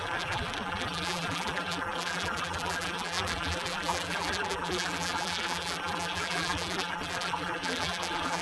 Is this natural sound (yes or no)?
no